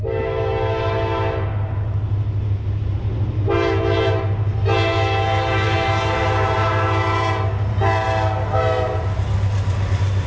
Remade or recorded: recorded